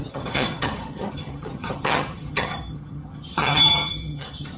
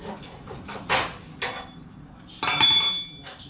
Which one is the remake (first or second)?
first